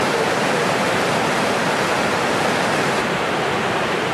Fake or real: fake